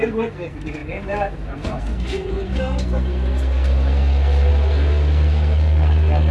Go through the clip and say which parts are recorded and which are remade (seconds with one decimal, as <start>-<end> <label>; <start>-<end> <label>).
0.0-6.3 remade